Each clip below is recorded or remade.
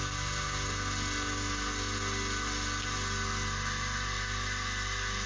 recorded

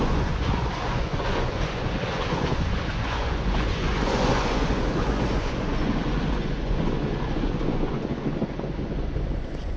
remade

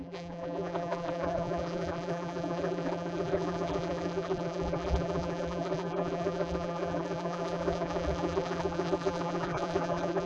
remade